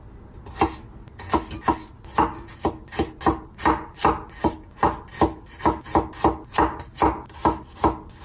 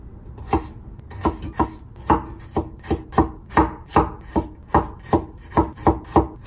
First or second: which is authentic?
first